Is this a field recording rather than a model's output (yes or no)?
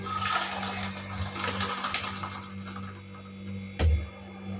yes